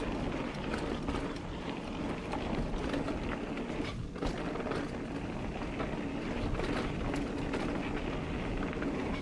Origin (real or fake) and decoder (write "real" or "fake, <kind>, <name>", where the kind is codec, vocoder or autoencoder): real